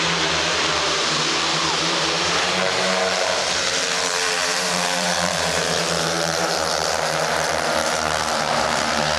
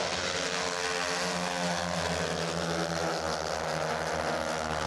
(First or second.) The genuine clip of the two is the second